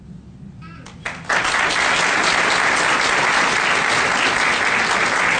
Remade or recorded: recorded